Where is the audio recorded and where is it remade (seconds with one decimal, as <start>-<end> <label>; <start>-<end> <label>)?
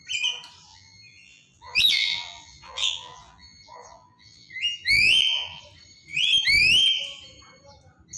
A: 0.0-0.7 recorded; 0.7-5.6 remade; 5.6-8.2 recorded